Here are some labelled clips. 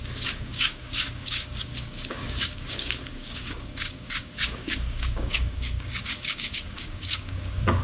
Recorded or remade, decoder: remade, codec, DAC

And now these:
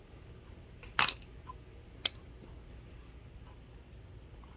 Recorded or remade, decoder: recorded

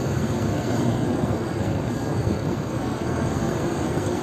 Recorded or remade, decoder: remade, codec, SNAC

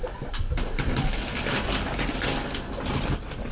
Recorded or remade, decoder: recorded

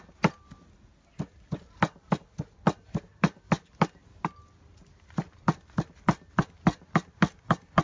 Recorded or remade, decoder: recorded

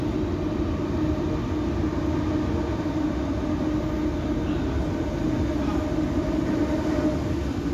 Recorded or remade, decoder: recorded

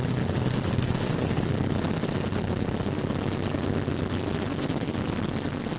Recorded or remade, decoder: recorded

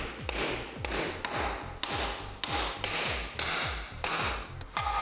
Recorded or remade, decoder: recorded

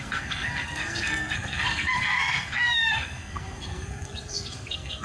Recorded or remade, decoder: remade, codec, SNAC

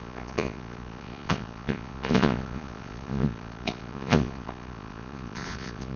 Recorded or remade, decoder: remade, vocoder, Vocos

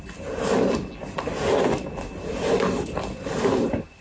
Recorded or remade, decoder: recorded